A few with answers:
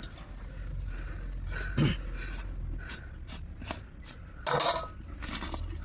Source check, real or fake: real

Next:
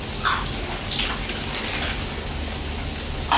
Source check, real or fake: real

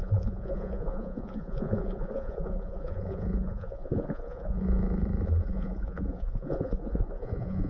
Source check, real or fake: fake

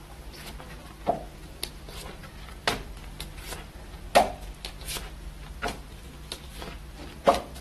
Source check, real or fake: real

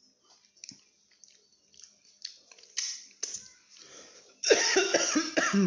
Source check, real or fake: real